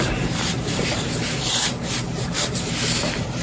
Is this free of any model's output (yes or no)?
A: no